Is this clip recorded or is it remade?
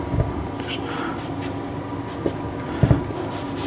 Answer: recorded